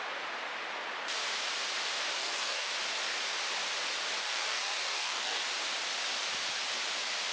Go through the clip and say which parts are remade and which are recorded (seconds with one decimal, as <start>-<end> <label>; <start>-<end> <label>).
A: 0.0-2.2 recorded; 2.2-2.7 remade; 2.7-4.2 recorded; 4.2-5.4 remade; 5.4-7.3 recorded